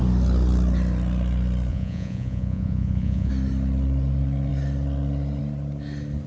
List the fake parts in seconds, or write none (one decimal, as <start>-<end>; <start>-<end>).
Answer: 1.7-3.3